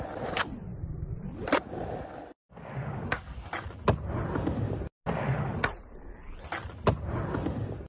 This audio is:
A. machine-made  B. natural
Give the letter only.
B